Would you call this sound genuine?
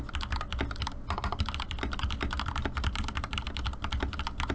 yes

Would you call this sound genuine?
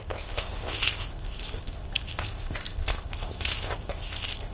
no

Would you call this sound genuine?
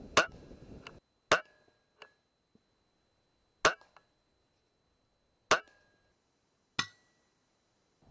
yes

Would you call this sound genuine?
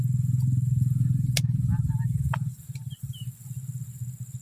yes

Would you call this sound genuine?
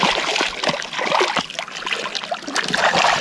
yes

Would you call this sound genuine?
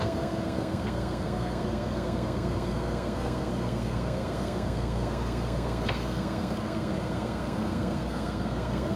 no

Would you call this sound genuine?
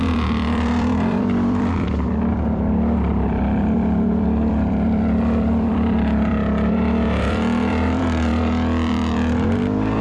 no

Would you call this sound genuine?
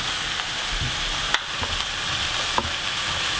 yes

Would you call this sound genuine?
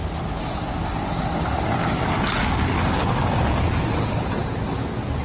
yes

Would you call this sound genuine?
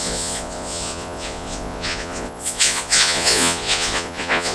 no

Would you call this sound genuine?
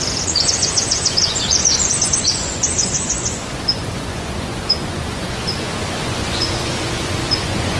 no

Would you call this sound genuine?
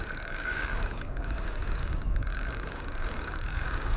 no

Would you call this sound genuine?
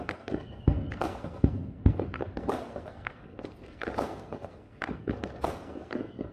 no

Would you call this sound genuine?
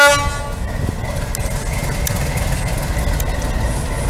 yes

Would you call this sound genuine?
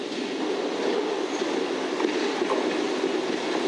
yes